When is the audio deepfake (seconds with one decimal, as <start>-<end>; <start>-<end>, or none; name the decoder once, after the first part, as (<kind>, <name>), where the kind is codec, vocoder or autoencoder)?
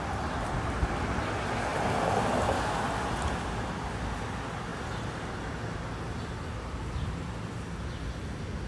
none